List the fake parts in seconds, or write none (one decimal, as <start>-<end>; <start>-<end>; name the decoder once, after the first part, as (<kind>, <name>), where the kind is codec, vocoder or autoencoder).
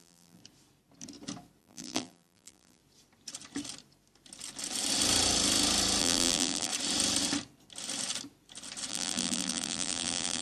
0.0-0.4 (vocoder, BigVGAN v2); 1.6-2.8; 6.0-6.7; 8.9-10.4